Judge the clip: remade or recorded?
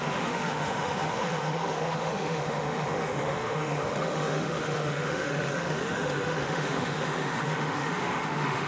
remade